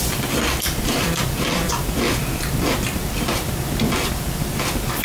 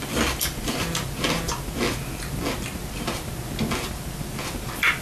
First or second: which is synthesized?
first